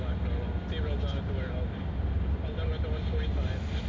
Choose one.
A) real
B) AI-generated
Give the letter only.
A